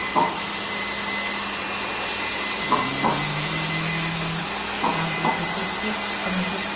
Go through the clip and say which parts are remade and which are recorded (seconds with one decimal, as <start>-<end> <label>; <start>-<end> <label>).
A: 0.0-3.3 recorded; 3.3-4.4 remade; 4.4-6.8 recorded